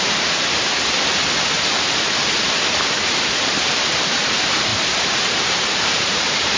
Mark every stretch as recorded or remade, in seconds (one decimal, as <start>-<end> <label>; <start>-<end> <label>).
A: 0.0-1.1 remade; 1.1-3.5 recorded; 3.5-6.6 remade